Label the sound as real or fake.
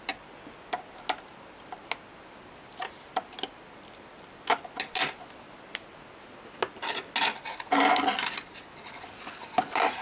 real